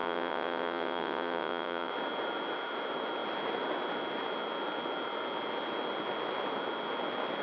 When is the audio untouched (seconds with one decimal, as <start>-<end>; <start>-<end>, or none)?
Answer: 1.9-7.4

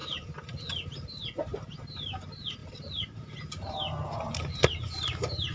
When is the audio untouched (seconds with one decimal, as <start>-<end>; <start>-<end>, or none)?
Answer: 0.0-5.5

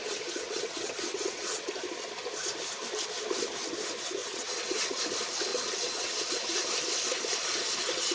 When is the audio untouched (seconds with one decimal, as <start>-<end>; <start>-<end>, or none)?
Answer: 1.7-4.2; 5.0-5.5; 6.2-8.1

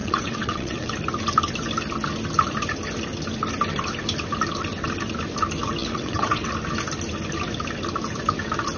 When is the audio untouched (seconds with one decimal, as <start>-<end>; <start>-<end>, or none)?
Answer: 0.9-5.8; 6.5-8.8

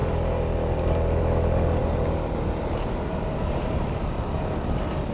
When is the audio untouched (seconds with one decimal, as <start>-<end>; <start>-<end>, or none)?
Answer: 0.0-5.1

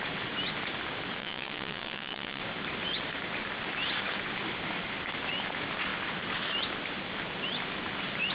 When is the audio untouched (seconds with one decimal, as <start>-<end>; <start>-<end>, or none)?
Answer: 0.0-1.2; 2.4-8.3

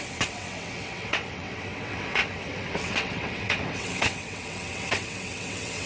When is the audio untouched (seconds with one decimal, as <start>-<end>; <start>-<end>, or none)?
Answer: none

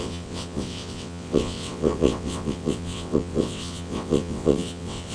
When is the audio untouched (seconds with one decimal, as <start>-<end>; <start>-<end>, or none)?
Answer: none